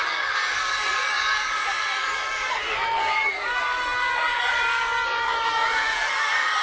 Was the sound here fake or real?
fake